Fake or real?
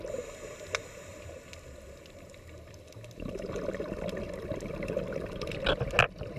real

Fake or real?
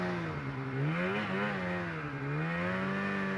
real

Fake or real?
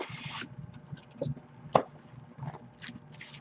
real